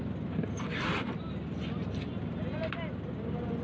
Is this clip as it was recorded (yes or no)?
yes